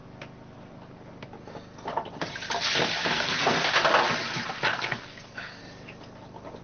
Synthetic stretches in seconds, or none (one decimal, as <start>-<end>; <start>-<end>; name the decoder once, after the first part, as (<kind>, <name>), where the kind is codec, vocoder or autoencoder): 3.0-3.7 (codec, SNAC); 4.7-5.6